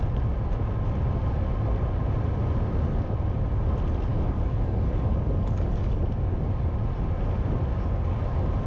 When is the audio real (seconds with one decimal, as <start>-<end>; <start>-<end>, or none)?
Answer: 0.0-4.1; 6.0-8.7